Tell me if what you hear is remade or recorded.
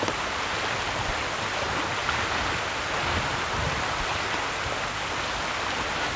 recorded